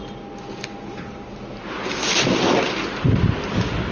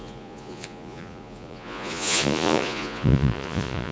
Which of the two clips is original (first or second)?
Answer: first